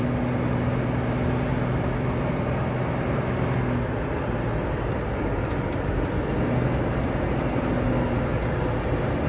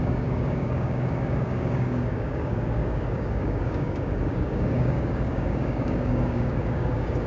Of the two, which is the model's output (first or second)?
second